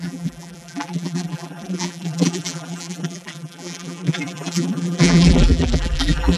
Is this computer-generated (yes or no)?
yes